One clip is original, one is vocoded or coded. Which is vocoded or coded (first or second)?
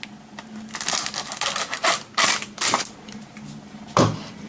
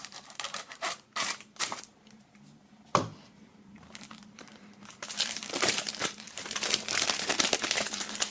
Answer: second